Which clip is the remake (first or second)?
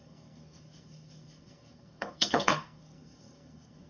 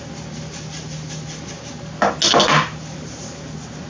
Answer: first